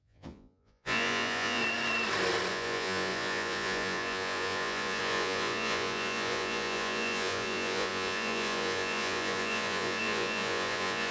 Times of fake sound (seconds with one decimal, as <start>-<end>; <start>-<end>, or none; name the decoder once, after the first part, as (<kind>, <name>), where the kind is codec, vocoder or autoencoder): 0.0-1.6 (vocoder, Vocos); 2.5-11.1